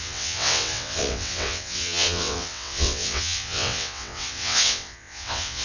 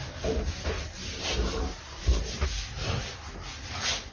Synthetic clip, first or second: first